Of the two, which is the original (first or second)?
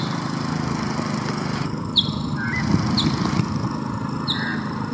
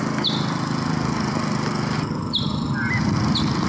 second